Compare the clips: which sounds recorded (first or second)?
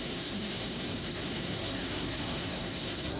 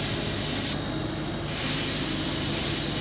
second